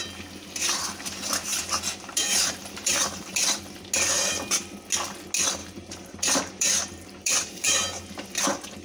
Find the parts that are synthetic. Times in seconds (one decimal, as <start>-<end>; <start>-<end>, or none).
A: 1.5-3.4; 5.6-8.0